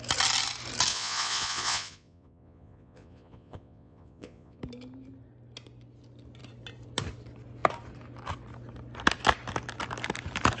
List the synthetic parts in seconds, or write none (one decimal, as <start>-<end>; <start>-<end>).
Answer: 0.9-4.6